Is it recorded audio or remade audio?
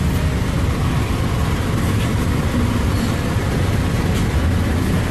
recorded